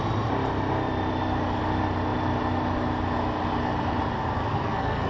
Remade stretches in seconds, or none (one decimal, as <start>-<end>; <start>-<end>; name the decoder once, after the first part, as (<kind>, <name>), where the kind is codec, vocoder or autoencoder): 4.5-5.1 (codec, SNAC)

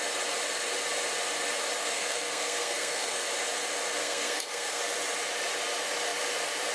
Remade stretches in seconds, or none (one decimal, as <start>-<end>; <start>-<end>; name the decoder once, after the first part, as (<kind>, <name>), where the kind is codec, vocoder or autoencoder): 1.8-3.2 (codec, SNAC); 4.0-4.8

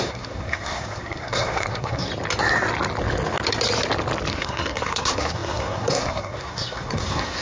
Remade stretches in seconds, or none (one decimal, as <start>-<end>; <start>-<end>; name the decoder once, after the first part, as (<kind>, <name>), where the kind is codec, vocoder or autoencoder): 0.0-2.1 (codec, SNAC); 4.3-7.4